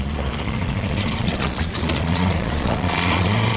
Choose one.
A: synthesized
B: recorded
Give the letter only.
A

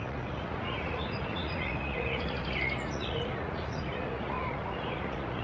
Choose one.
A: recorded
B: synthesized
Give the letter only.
B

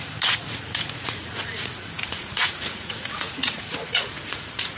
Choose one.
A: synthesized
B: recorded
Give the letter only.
A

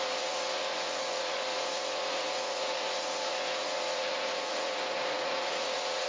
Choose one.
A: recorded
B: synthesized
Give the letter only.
B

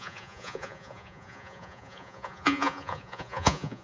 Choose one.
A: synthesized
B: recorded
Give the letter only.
A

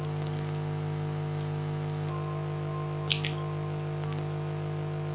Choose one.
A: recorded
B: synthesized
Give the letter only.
A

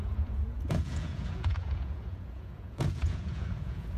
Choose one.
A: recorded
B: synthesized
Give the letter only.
B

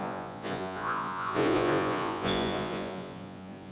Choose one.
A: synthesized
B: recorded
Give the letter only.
A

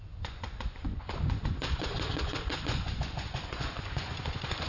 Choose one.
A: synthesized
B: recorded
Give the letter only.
A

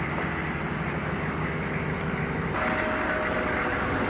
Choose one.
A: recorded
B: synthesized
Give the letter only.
A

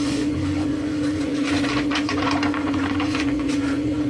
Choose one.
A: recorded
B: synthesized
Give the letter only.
B